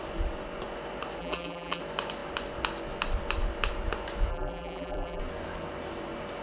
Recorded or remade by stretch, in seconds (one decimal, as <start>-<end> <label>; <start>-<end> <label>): 0.0-1.2 recorded; 1.2-1.8 remade; 1.8-4.3 recorded; 4.3-5.2 remade; 5.2-6.4 recorded